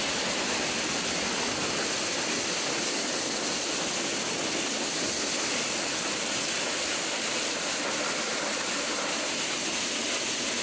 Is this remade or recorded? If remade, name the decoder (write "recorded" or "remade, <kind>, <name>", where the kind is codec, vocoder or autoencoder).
recorded